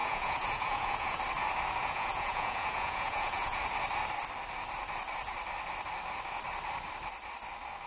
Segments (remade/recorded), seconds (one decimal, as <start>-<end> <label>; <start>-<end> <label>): 0.0-1.2 remade; 1.2-1.8 recorded; 1.8-3.6 remade; 3.6-7.9 recorded